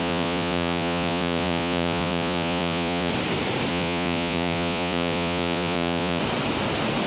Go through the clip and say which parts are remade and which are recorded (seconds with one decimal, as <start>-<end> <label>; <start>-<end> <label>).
0.0-3.1 remade; 3.1-3.7 recorded; 3.7-6.2 remade; 6.2-7.1 recorded